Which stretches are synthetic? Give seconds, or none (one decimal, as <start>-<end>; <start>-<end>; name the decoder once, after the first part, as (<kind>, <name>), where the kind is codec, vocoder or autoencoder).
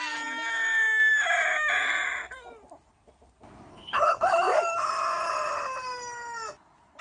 3.7-4.3 (codec, HILCodec)